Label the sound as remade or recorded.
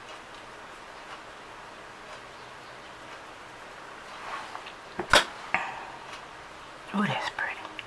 recorded